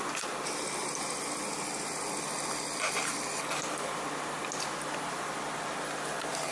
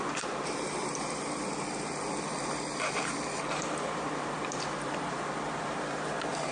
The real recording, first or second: first